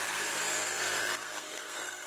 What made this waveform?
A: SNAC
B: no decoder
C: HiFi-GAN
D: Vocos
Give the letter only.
A